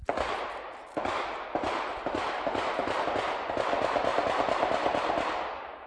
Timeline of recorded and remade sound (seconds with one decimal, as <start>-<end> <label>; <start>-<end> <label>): 0.0-4.1 recorded; 4.1-5.1 remade; 5.1-5.9 recorded